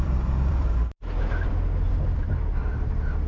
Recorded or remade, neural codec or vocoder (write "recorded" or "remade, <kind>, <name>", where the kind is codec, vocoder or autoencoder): remade, vocoder, BigVGAN v2